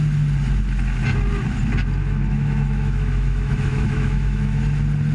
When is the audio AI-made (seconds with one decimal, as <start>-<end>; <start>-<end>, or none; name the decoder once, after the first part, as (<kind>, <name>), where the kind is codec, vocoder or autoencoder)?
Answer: 2.0-4.6 (autoencoder, DAC-VAE)

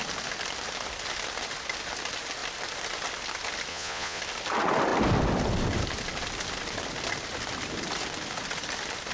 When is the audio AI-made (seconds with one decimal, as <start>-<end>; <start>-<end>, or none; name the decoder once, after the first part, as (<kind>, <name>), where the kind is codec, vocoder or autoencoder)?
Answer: 3.7-4.2 (vocoder, Vocos)

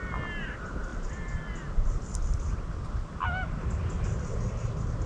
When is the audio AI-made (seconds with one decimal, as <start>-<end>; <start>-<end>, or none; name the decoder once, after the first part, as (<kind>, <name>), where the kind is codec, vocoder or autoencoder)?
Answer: none

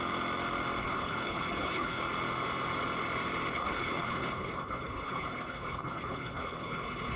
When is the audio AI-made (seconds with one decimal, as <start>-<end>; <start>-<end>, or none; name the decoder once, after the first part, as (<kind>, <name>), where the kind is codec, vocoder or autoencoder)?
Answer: 0.8-2.0 (codec, HILCodec); 3.5-7.2

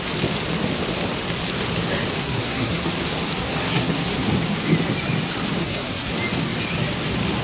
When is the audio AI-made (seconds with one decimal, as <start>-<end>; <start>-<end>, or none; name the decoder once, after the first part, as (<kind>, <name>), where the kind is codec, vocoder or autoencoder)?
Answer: 2.2-2.9 (codec, SNAC); 3.5-4.3; 5.6-6.1